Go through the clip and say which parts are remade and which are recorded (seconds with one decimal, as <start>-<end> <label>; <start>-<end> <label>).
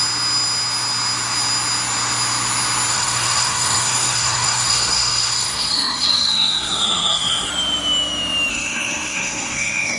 0.0-2.9 recorded; 2.9-7.5 remade; 7.5-8.5 recorded; 8.5-10.0 remade